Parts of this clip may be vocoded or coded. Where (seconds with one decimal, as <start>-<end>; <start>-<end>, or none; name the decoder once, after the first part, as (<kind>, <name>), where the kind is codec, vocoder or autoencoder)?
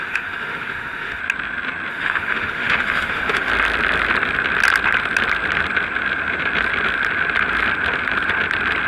0.0-1.2 (autoencoder, DAC-VAE); 1.9-3.5